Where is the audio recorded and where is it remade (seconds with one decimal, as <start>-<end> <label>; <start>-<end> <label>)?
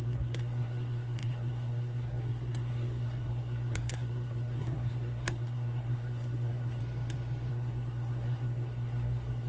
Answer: 0.0-6.8 remade; 6.8-7.5 recorded; 7.5-9.5 remade